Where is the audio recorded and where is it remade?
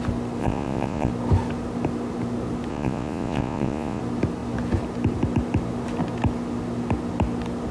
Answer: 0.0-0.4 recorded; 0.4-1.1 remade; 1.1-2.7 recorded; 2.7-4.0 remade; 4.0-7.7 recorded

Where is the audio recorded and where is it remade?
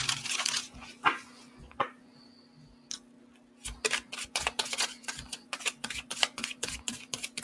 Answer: 0.0-2.1 remade; 2.1-4.2 recorded; 4.2-7.4 remade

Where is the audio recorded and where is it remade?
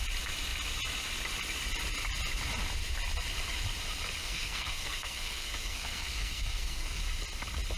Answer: 0.0-4.2 recorded; 4.2-7.0 remade; 7.0-7.8 recorded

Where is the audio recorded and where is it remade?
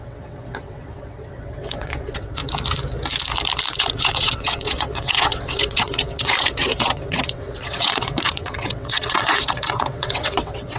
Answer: 0.0-2.4 remade; 2.4-3.8 recorded; 3.8-10.8 remade